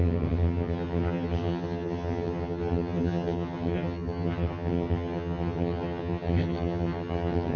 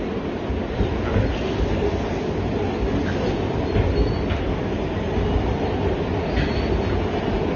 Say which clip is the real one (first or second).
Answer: second